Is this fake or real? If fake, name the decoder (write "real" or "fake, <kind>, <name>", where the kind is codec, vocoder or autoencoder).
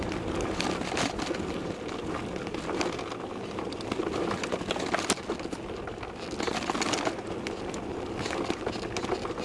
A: real